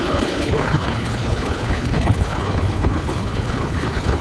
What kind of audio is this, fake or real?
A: fake